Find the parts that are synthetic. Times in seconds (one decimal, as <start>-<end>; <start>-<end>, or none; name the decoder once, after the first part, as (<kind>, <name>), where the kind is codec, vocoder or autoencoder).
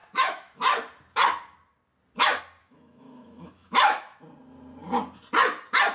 0.0-0.6 (autoencoder, DAC-VAE); 2.6-4.2